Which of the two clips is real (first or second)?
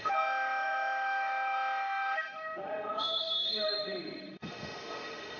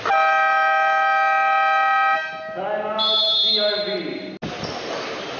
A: second